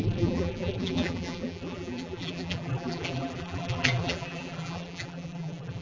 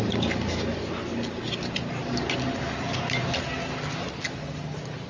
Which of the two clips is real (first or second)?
second